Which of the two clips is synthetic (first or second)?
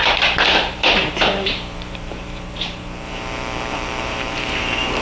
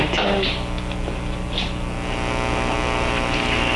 first